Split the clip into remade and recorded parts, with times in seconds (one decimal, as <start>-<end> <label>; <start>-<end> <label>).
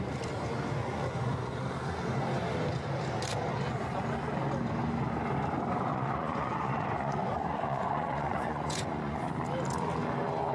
0.0-0.8 recorded; 0.8-1.6 remade; 1.6-5.9 recorded; 5.9-9.2 remade; 9.2-10.5 recorded